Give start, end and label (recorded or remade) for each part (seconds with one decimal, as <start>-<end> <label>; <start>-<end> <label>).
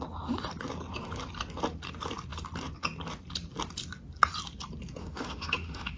0.0-5.0 recorded; 5.0-6.0 remade